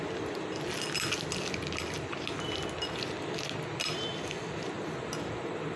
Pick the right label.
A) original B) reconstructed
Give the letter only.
A